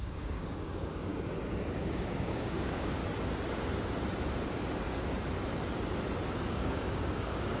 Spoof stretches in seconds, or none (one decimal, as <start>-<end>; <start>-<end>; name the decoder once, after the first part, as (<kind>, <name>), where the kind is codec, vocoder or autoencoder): 0.0-1.1 (codec, DAC); 1.7-3.0; 6.5-7.6